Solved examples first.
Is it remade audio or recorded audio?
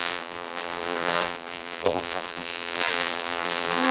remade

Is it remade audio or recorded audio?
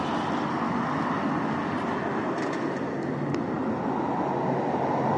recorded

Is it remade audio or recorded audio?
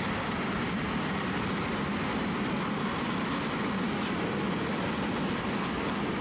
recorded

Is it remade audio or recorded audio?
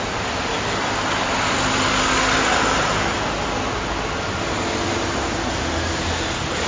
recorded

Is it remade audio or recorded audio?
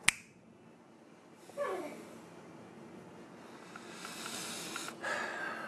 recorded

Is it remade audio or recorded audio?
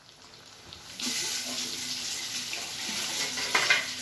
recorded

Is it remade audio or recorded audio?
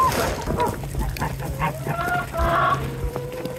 remade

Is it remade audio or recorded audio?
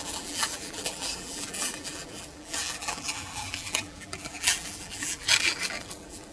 remade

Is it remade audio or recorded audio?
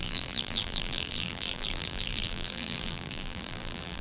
remade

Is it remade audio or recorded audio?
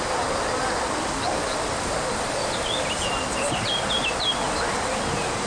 recorded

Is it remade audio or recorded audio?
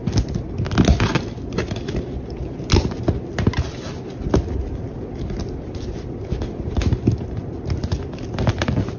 recorded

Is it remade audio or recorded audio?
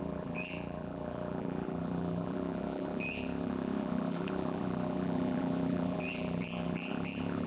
remade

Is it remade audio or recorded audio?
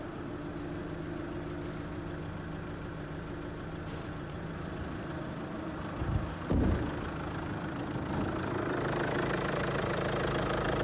remade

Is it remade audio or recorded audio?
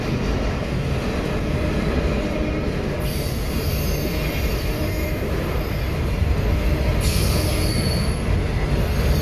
recorded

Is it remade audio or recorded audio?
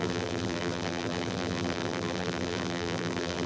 remade